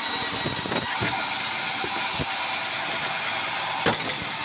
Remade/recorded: recorded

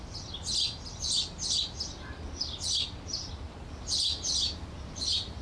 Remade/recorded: recorded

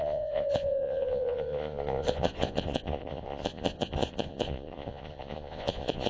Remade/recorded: remade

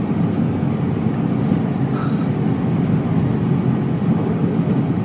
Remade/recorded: recorded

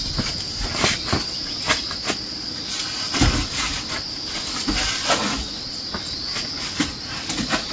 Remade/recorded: recorded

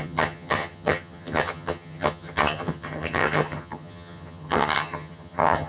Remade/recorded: remade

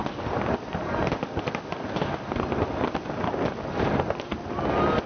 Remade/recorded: recorded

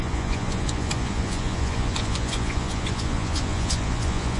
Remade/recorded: remade